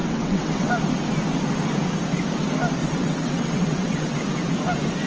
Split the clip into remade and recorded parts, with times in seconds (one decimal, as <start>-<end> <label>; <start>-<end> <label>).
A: 0.0-0.7 remade; 0.7-2.8 recorded; 2.8-4.2 remade; 4.2-5.1 recorded